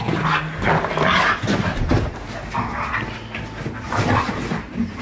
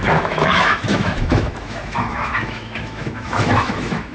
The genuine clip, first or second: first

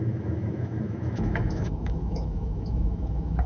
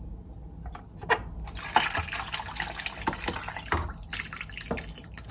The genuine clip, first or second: second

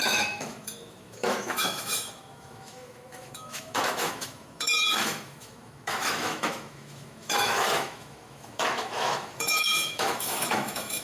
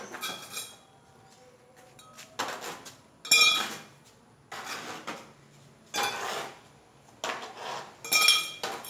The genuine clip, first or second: second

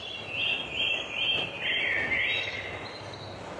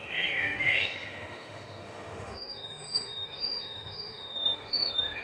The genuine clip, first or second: first